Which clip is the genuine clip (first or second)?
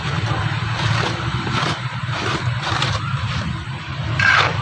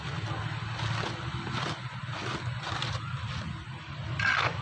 second